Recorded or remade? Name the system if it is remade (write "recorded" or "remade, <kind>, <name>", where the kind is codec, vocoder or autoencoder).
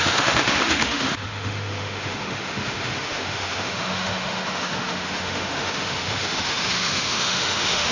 remade, autoencoder, DAC-VAE